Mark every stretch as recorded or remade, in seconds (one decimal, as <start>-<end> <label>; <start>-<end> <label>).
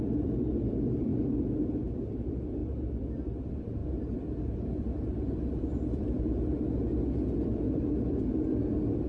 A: 0.0-9.1 remade